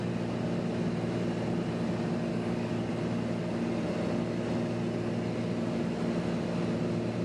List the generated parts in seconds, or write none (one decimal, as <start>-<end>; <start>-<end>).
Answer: 2.3-2.9